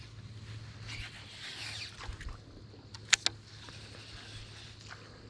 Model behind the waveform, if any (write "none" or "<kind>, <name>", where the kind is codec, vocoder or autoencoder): none